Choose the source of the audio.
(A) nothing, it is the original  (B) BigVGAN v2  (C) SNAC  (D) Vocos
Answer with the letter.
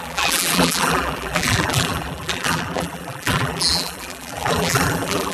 B